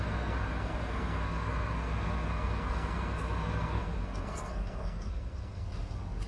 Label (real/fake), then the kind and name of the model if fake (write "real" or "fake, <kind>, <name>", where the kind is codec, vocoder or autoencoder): fake, codec, SNAC